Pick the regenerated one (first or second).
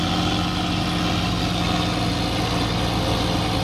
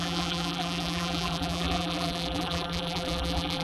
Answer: second